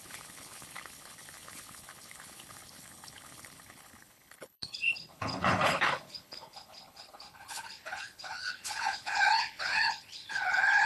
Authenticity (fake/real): fake